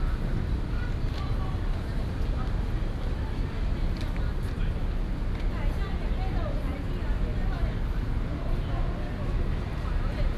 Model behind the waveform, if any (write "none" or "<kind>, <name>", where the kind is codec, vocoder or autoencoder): none